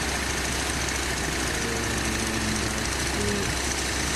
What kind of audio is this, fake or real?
real